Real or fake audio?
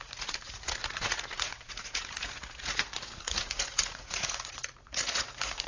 fake